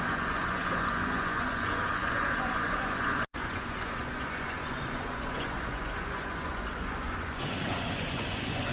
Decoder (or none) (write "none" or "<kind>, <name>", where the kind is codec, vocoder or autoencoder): vocoder, Vocos